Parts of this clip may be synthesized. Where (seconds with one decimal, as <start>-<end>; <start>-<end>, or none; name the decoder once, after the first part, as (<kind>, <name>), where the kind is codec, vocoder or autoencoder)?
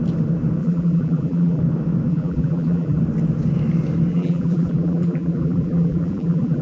0.6-1.6 (vocoder, BigVGAN v2); 2.1-3.0; 4.1-6.6